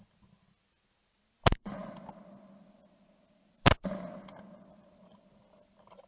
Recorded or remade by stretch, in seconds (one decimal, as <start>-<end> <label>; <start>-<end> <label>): 0.0-6.1 recorded